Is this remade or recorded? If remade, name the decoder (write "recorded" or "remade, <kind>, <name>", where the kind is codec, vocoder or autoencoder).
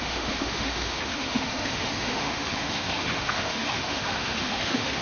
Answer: remade, autoencoder, DAC-VAE